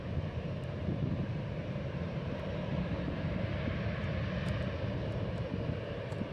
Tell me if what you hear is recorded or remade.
recorded